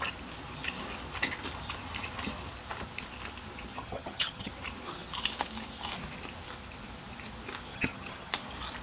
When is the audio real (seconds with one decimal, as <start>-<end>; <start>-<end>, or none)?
0.0-3.7; 4.5-7.7; 8.3-8.8